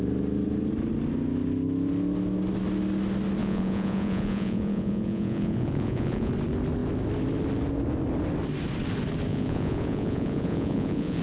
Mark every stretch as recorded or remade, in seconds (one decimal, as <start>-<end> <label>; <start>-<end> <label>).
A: 0.0-3.4 recorded; 3.4-6.3 remade; 6.3-9.3 recorded; 9.3-11.2 remade